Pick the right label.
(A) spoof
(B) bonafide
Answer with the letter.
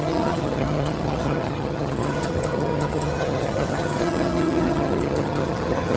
A